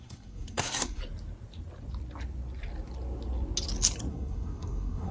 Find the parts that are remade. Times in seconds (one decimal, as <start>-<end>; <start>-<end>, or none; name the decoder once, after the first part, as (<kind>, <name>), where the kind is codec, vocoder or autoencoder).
0.0-1.0 (codec, SNAC); 4.1-5.1